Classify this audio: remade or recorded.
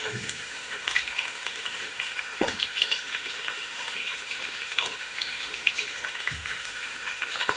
remade